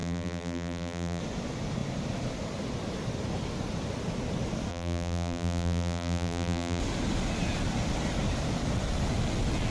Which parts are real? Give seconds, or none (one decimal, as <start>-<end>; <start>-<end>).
1.2-4.7; 6.8-9.7

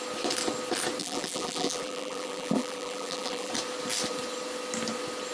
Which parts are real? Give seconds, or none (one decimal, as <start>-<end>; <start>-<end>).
0.0-1.0; 3.5-5.3

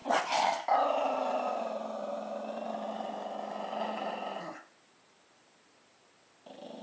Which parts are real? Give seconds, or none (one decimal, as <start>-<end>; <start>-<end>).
none

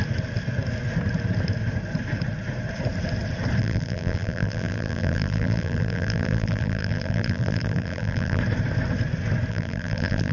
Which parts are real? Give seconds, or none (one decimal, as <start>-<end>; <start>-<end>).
0.0-3.6; 8.4-9.5